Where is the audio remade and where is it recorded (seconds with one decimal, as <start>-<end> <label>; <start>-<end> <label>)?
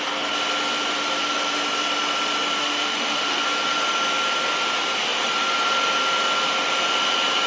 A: 0.0-2.6 recorded; 2.6-3.4 remade; 3.4-7.5 recorded